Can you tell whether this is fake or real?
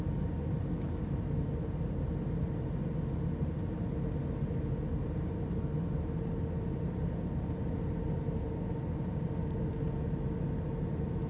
real